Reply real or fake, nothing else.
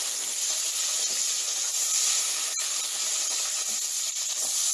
real